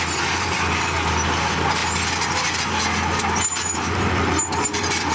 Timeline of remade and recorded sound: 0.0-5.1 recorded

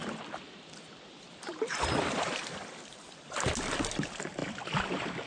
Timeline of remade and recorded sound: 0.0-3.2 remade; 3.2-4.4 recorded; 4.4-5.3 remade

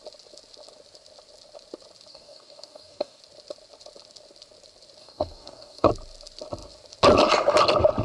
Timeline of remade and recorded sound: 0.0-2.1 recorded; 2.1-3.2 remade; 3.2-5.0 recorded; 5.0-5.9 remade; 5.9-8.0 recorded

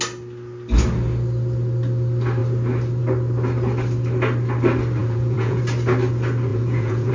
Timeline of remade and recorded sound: 0.0-5.0 recorded; 5.0-5.6 remade; 5.6-6.5 recorded; 6.5-7.1 remade

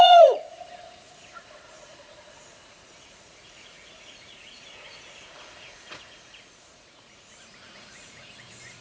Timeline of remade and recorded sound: 0.0-8.8 remade

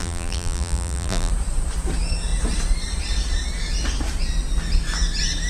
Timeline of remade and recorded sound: 0.0-1.3 remade; 1.3-5.5 recorded

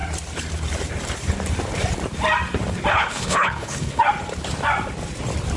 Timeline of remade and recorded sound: 0.0-2.9 recorded; 2.9-4.0 remade; 4.0-5.6 recorded